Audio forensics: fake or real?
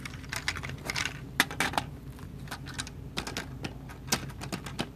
real